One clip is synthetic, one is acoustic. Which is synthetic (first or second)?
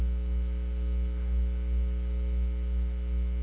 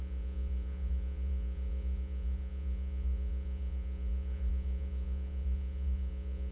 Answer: second